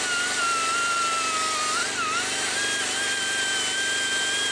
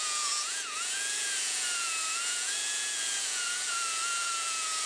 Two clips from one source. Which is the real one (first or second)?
first